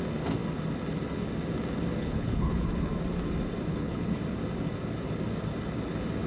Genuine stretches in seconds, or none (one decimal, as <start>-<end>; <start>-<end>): 0.0-2.0; 2.9-3.7; 4.2-6.3